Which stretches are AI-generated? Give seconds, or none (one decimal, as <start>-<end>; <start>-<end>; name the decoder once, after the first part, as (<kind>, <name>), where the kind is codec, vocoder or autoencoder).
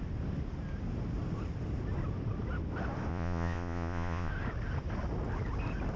3.1-4.3 (vocoder, Vocos)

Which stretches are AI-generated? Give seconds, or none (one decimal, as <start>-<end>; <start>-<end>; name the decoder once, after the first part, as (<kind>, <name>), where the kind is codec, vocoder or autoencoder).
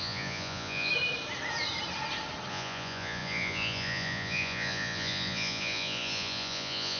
0.0-0.9 (vocoder, Vocos); 2.5-7.0